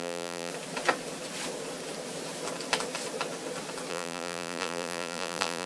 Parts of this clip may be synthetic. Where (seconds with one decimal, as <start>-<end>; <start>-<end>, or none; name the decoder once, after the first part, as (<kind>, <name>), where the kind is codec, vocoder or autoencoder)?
0.0-0.5 (vocoder, BigVGAN v2); 3.9-5.7